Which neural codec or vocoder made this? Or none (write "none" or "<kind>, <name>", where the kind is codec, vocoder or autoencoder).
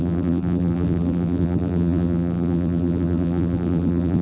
vocoder, BigVGAN v2